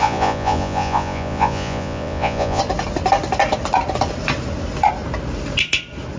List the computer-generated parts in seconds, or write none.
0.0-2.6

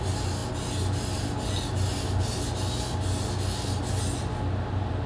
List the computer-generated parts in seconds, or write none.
none